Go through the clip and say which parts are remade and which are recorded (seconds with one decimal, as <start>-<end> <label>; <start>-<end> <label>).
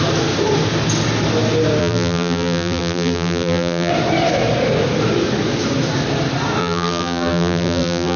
0.0-1.8 recorded; 1.8-3.9 remade; 3.9-6.6 recorded; 6.6-8.2 remade